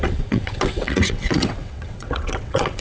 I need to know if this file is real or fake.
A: fake